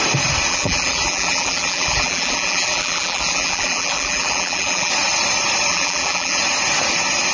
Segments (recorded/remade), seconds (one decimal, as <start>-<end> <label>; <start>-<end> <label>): 0.0-0.5 recorded; 0.5-4.9 remade; 4.9-5.7 recorded; 5.7-6.4 remade; 6.4-7.3 recorded